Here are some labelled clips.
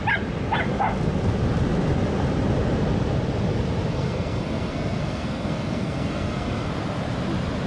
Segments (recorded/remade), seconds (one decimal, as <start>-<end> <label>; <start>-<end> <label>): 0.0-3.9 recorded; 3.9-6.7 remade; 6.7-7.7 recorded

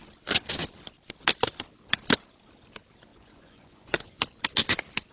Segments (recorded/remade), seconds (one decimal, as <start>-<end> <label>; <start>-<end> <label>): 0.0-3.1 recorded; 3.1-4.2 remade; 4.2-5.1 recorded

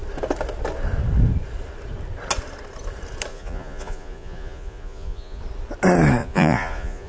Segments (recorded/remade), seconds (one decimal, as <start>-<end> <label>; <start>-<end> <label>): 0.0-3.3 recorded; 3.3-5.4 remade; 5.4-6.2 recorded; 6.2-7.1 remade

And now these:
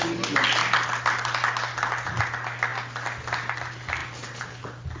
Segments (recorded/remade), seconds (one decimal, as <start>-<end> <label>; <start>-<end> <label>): 0.0-5.0 recorded

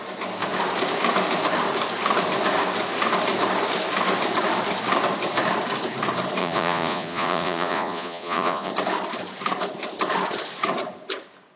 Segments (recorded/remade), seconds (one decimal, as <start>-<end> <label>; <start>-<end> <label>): 0.0-6.4 recorded; 6.4-8.7 remade; 8.7-11.6 recorded